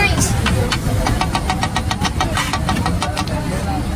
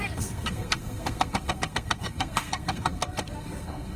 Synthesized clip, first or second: second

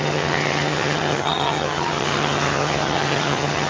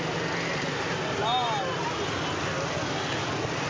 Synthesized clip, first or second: first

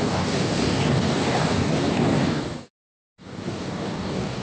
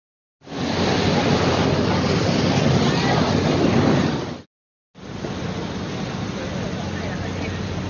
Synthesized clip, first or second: first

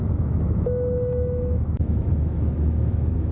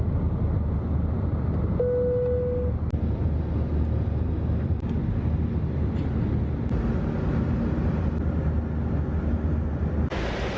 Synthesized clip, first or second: first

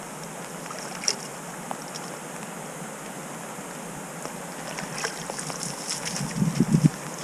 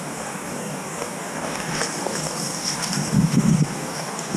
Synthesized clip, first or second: second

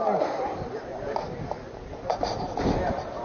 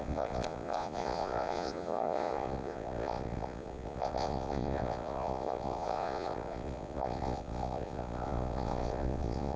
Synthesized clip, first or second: second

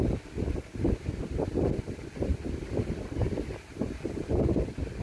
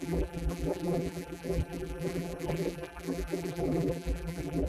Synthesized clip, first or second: second